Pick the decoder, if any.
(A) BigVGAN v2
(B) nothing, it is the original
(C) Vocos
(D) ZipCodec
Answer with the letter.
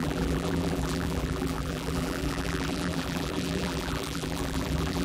A